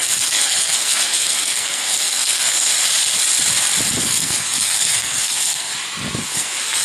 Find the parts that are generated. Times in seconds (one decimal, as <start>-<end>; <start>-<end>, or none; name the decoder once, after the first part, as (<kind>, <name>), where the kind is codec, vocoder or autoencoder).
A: 0.0-2.7 (codec, SNAC); 4.0-5.7; 6.2-6.8